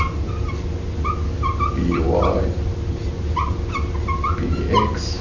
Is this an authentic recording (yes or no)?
yes